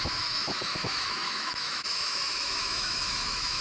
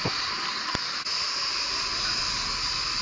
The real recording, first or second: second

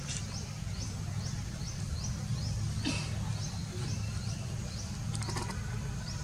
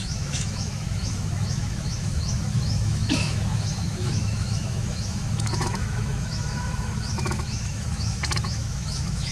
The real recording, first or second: first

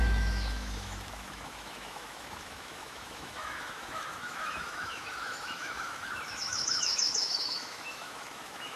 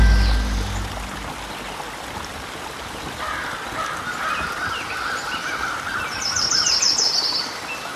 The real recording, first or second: second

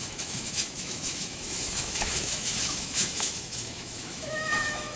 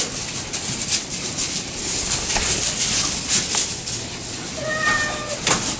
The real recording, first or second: second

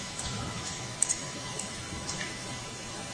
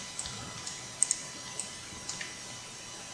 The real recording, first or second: second